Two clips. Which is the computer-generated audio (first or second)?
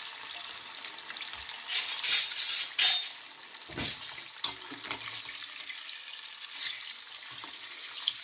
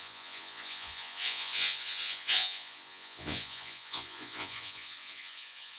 second